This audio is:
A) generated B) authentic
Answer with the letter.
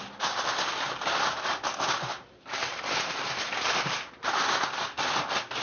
B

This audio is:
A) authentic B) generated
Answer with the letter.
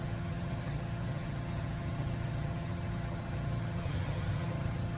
B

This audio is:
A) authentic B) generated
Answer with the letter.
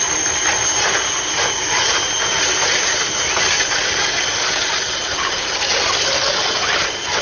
A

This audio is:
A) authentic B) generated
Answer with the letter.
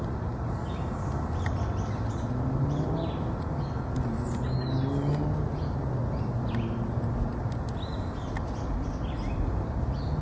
A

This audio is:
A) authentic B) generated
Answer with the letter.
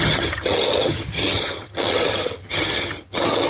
B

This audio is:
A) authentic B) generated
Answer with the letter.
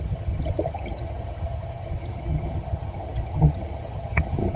B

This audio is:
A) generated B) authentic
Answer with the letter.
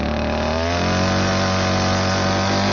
B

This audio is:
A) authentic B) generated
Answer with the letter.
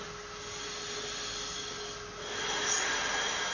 A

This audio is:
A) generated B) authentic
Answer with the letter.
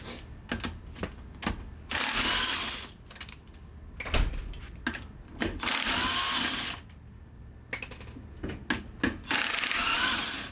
B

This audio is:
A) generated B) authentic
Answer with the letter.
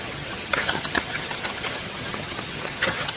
A